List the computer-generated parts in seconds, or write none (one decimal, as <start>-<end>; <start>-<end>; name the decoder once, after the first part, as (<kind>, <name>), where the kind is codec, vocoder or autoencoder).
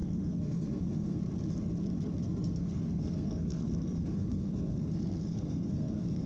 0.0-1.2 (codec, SNAC); 2.2-6.3